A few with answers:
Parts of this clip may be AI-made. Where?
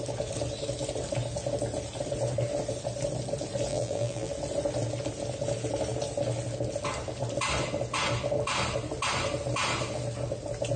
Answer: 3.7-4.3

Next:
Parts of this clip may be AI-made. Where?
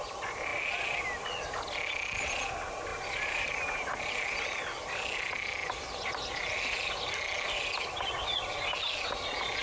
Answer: 2.9-4.2